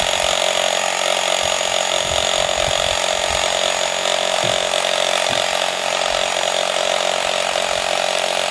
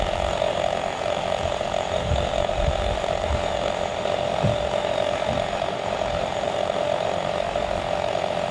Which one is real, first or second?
first